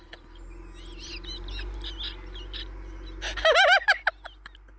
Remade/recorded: recorded